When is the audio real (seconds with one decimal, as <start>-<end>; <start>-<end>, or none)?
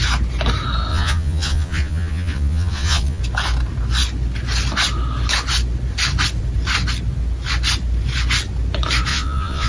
0.0-0.9; 3.2-9.1